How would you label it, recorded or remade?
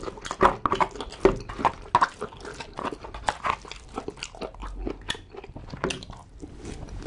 recorded